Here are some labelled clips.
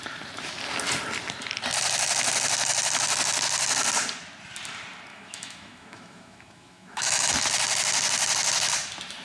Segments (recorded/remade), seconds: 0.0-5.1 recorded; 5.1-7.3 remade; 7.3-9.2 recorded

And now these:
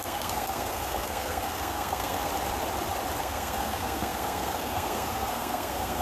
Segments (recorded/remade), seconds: 0.0-2.3 remade; 2.3-3.2 recorded; 3.2-6.0 remade

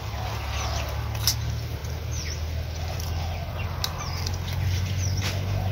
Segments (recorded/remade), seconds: 0.0-5.7 recorded

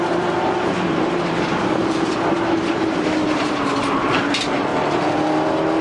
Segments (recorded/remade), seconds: 0.0-4.7 remade; 4.7-5.8 recorded

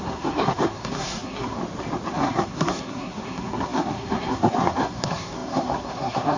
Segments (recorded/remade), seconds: 0.0-1.6 remade; 1.6-2.1 recorded; 2.1-6.4 remade

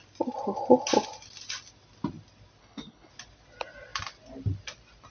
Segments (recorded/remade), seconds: 0.0-2.6 recorded; 2.6-3.1 remade; 3.1-5.1 recorded

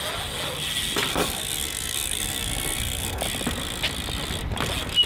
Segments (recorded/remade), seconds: 0.0-1.1 recorded; 1.1-3.2 remade; 3.2-5.1 recorded

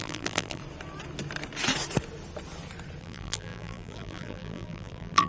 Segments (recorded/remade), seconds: 0.0-0.6 remade; 0.6-3.0 recorded; 3.0-5.3 remade